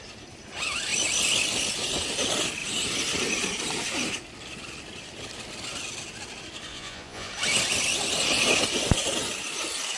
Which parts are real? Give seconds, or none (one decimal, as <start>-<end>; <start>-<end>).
0.0-6.7; 7.3-10.0